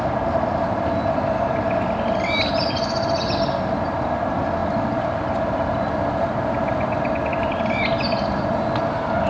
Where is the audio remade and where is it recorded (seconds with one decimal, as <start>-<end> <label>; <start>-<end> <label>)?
0.0-9.3 recorded

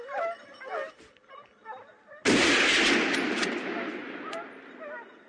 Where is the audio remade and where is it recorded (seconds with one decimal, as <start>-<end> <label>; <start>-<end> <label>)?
0.0-5.3 recorded

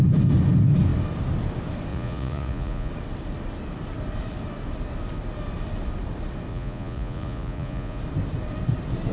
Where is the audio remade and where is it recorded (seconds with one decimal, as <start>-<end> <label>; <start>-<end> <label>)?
0.0-1.9 recorded; 1.9-2.9 remade; 2.9-6.5 recorded; 6.5-8.0 remade; 8.0-9.1 recorded

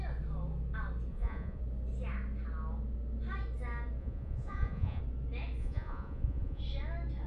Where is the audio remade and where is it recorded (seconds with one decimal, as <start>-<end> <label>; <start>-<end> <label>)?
0.0-1.1 recorded; 1.1-1.6 remade; 1.6-4.0 recorded; 4.0-5.0 remade; 5.0-5.6 recorded; 5.6-6.6 remade; 6.6-7.3 recorded